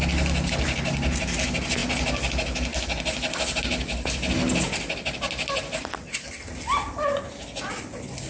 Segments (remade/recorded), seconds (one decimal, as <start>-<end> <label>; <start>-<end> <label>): 0.0-8.3 recorded